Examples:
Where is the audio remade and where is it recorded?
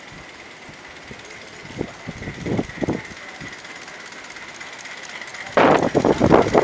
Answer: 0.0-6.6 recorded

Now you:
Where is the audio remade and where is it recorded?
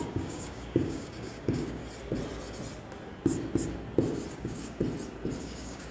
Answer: 0.0-1.8 remade; 1.8-4.3 recorded; 4.3-4.8 remade; 4.8-5.4 recorded; 5.4-5.9 remade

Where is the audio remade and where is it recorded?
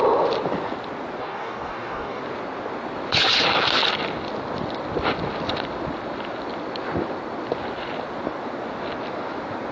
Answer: 0.0-1.2 recorded; 1.2-2.2 remade; 2.2-9.7 recorded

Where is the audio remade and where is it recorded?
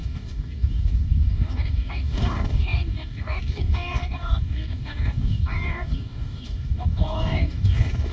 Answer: 0.0-8.1 remade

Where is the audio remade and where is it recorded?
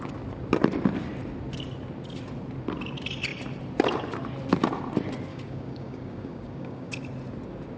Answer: 0.0-5.3 recorded; 5.3-6.9 remade; 6.9-7.8 recorded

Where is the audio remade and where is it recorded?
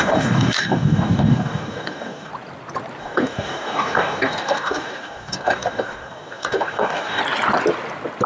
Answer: 0.0-2.3 remade; 2.3-3.0 recorded; 3.0-7.2 remade; 7.2-8.3 recorded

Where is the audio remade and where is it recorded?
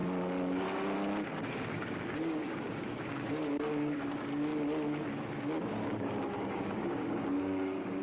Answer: 0.0-1.7 recorded; 1.7-4.5 remade; 4.5-5.7 recorded; 5.7-8.0 remade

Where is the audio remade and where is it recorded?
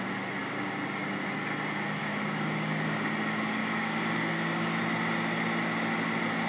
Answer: 0.0-0.4 recorded; 0.4-1.3 remade; 1.3-2.0 recorded; 2.0-3.1 remade; 3.1-3.6 recorded; 3.6-4.8 remade; 4.8-6.5 recorded